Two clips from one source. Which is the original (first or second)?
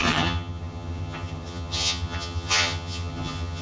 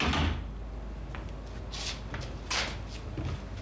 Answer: second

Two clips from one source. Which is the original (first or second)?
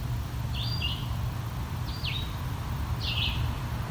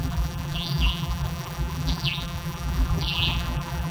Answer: first